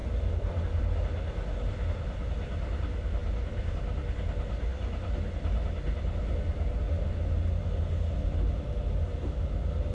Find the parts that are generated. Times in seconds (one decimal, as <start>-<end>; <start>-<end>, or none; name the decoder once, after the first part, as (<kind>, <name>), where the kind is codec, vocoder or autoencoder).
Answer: none